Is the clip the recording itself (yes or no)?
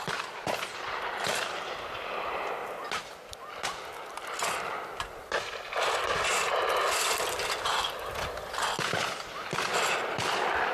yes